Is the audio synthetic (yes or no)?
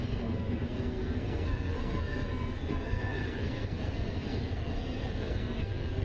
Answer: yes